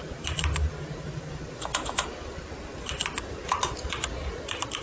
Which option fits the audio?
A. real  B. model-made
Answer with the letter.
A